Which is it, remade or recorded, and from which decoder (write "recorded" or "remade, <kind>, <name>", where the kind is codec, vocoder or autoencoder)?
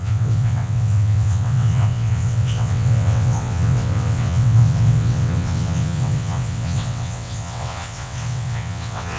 remade, vocoder, WaveNeXt